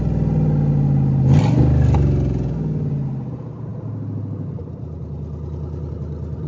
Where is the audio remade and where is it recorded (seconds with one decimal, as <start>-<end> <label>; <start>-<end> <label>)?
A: 0.0-6.5 recorded